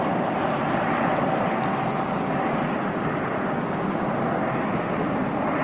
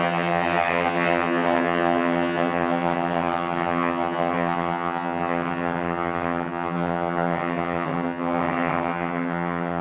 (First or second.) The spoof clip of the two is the second